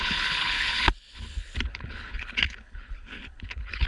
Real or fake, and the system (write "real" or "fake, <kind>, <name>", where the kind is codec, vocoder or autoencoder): fake, codec, HILCodec